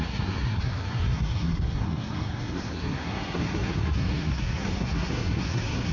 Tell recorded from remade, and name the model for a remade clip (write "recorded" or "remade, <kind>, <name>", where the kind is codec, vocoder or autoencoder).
remade, codec, SNAC